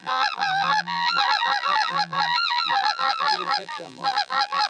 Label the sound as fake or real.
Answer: fake